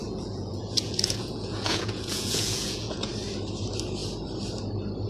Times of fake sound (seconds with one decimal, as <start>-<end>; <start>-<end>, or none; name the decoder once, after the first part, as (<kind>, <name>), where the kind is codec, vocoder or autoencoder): 0.0-3.1 (vocoder, Vocos)